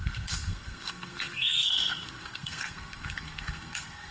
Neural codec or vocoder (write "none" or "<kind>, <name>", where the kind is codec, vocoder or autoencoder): codec, SNAC